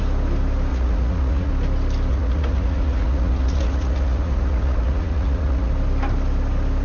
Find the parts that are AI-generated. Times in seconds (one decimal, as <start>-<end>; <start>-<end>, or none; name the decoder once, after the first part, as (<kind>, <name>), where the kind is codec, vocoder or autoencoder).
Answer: 0.7-1.5 (vocoder, Vocos); 2.1-5.7